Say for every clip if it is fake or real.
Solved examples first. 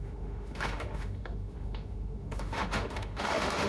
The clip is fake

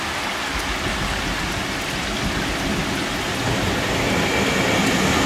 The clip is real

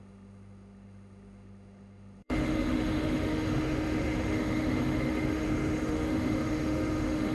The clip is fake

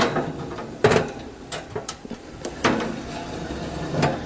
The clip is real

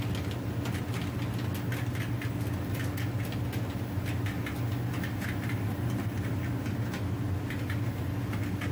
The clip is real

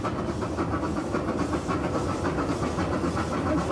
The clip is real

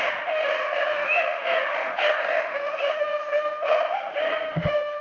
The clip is fake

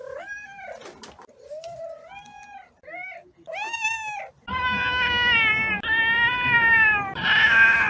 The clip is real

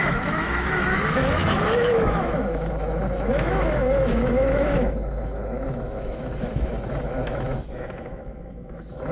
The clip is fake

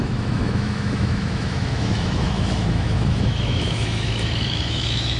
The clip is fake